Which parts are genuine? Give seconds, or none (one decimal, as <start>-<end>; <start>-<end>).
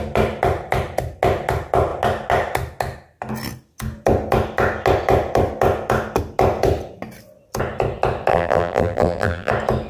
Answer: 0.0-8.3; 9.5-9.9